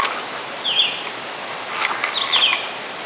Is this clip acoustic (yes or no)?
yes